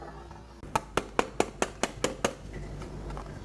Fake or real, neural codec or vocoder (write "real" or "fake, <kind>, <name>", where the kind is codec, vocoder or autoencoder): real